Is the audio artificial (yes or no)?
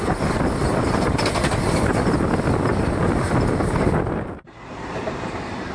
no